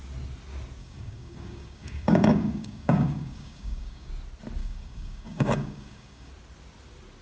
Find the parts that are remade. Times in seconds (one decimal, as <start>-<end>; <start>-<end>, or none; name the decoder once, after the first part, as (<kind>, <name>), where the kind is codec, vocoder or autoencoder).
0.8-4.1 (codec, DAC); 4.6-6.3